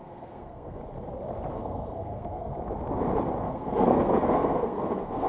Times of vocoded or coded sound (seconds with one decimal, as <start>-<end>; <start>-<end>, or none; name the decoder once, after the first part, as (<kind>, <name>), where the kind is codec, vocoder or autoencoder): 0.0-0.8 (codec, SNAC); 1.5-2.5; 3.4-5.3